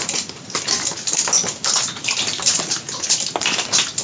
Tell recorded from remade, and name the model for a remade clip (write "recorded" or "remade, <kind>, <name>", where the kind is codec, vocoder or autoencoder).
recorded